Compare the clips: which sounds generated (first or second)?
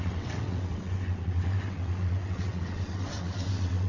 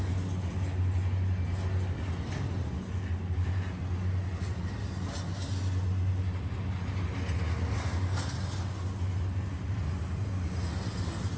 first